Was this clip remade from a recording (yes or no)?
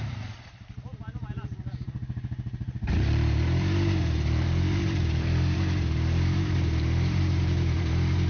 yes